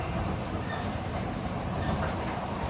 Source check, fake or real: fake